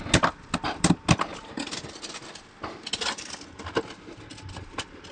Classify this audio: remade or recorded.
recorded